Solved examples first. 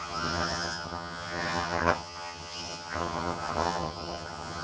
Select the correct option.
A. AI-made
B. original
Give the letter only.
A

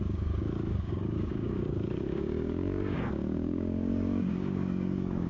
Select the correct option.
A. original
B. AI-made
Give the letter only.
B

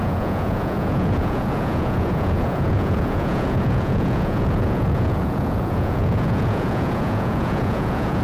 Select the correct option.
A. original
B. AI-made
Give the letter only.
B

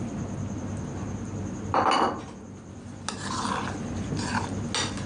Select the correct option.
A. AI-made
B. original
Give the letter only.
B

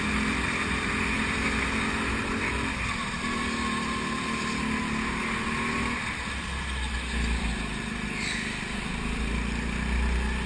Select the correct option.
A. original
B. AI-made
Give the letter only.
A